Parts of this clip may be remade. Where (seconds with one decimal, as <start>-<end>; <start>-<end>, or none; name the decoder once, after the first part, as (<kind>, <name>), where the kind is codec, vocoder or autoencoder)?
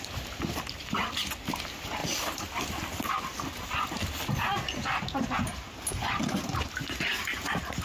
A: 2.0-3.1 (vocoder, BigVGAN v2)